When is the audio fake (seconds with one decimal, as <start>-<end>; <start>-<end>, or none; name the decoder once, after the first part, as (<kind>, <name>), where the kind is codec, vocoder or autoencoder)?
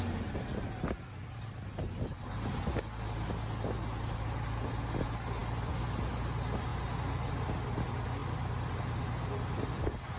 none